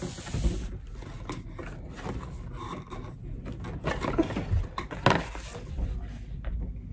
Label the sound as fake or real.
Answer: real